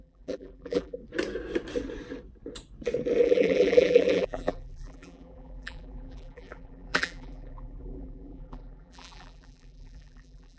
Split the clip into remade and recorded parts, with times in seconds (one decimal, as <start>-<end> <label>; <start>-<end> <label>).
0.0-1.0 remade; 1.0-3.2 recorded; 3.2-10.6 remade